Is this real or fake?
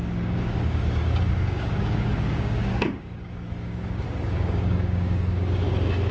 fake